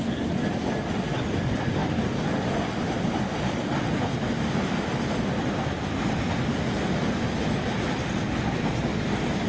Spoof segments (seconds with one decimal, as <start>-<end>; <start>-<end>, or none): none